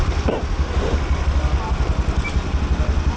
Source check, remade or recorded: recorded